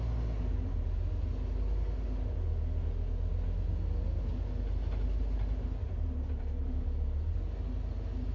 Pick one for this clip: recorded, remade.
recorded